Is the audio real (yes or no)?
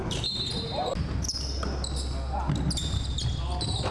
yes